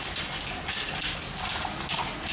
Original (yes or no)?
yes